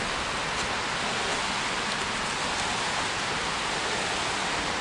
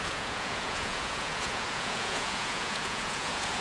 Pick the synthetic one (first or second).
second